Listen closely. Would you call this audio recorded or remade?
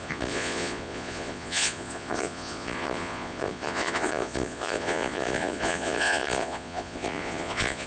remade